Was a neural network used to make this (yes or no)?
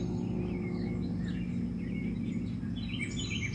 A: no